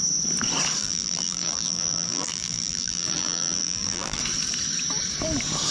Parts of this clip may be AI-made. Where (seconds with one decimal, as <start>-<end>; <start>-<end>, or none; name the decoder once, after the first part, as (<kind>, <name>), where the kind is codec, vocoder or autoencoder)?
0.8-4.2 (vocoder, BigVGAN v2)

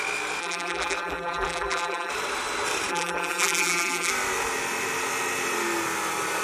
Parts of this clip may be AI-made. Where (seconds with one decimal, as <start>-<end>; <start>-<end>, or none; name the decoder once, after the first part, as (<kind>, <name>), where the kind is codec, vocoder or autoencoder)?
0.4-2.1 (vocoder, BigVGAN v2); 2.9-4.1

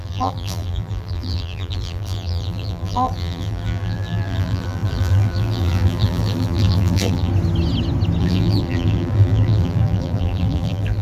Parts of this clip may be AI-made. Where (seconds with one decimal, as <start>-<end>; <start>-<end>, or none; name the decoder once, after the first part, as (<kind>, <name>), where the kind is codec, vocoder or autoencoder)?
0.0-7.3 (vocoder, BigVGAN v2); 8.2-11.0

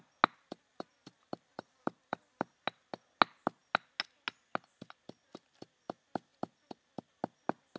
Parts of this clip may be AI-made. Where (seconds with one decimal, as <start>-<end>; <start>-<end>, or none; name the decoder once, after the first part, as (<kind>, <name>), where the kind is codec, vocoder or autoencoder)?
0.5-2.5 (vocoder, BigVGAN v2); 6.3-7.0

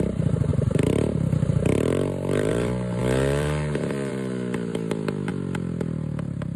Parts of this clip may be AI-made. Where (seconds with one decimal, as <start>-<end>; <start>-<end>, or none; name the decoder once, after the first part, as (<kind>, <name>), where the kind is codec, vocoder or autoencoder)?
0.0-6.6 (vocoder, BigVGAN v2)

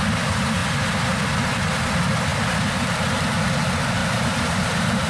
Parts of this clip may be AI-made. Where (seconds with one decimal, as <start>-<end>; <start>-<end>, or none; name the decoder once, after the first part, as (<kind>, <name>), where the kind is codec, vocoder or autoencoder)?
4.0-5.1 (vocoder, BigVGAN v2)

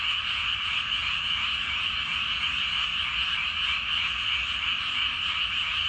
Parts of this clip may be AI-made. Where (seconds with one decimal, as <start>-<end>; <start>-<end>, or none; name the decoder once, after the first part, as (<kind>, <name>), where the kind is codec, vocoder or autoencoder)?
none

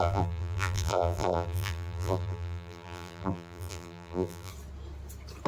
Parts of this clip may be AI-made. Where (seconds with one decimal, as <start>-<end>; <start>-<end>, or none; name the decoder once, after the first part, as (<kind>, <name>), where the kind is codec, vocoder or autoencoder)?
0.0-4.5 (vocoder, BigVGAN v2)